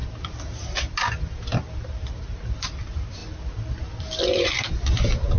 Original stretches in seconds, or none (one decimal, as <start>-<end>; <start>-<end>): 0.0-5.4